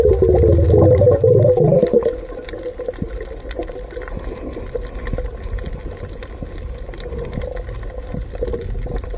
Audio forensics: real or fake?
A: real